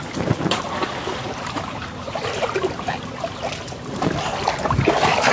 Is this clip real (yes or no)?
yes